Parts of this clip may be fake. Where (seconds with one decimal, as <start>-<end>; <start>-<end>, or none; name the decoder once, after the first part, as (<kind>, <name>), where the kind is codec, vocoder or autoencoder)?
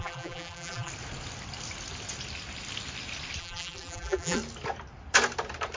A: 0.0-0.9 (vocoder, BigVGAN v2); 3.4-4.4